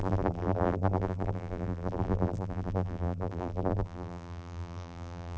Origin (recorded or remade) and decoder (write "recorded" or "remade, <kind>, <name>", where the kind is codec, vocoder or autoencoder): remade, vocoder, BigVGAN v2